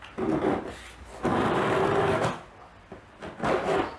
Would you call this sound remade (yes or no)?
no